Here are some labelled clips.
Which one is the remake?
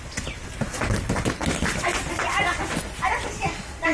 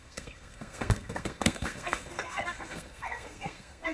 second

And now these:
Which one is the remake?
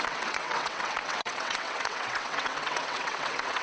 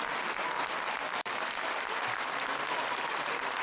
first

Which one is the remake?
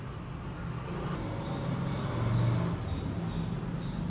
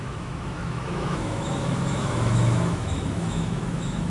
second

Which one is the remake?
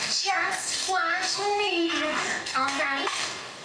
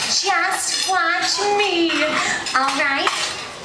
first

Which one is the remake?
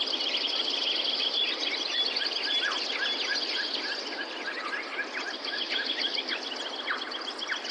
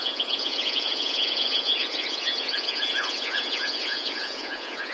second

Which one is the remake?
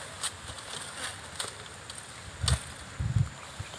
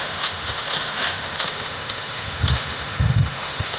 second